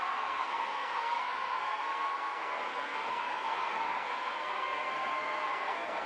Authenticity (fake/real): fake